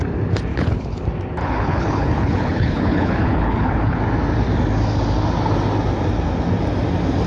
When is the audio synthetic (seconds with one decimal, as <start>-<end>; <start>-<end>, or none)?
0.5-1.0; 1.4-4.0